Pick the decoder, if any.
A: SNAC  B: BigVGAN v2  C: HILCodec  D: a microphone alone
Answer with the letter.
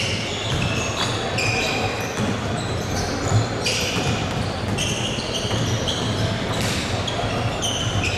D